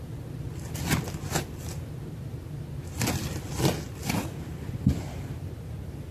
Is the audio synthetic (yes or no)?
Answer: no